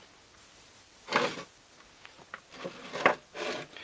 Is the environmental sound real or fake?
real